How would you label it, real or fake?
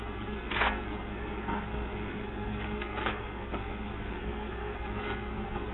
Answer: fake